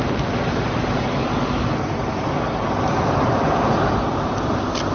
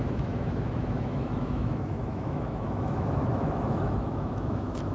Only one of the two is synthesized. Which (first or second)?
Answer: second